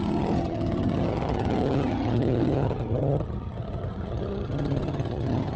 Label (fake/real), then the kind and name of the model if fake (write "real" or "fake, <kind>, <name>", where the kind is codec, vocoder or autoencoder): fake, vocoder, HiFi-GAN